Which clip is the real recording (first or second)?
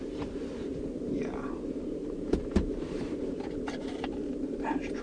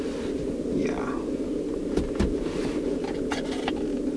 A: second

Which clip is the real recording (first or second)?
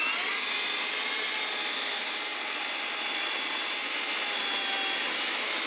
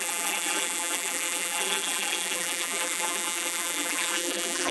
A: first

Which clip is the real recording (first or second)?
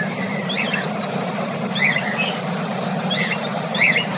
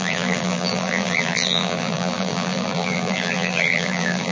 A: first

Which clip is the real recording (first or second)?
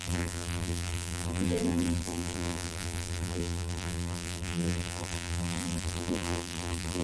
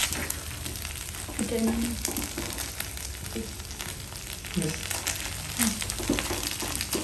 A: second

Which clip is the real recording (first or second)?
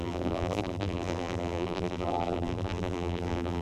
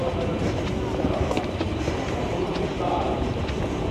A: second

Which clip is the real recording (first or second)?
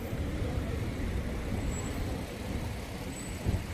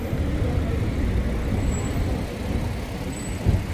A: second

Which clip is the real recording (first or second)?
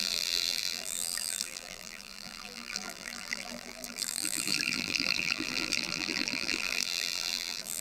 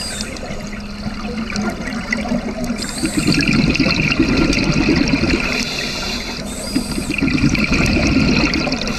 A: second